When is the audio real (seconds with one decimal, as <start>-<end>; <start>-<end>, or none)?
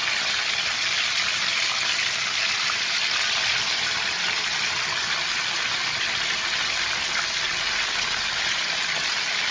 0.0-9.5